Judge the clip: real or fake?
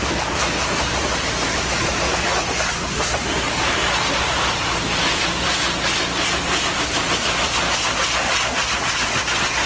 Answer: real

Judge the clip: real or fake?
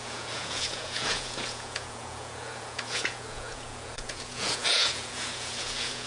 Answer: fake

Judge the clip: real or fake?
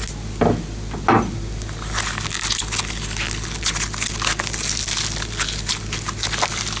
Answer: real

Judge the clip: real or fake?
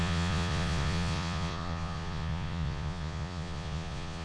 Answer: fake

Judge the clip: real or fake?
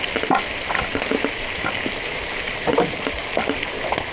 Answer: real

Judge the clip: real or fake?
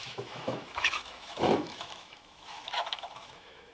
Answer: fake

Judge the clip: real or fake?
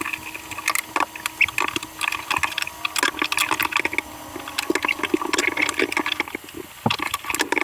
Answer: real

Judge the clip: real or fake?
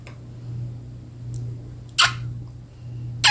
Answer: real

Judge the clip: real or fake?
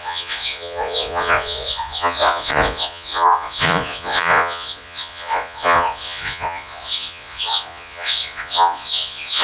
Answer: fake